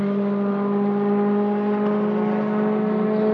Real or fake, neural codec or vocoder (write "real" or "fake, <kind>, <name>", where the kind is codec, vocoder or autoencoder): real